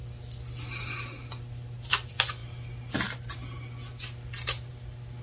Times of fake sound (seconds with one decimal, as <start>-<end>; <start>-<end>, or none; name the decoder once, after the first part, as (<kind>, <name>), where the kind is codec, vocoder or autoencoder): none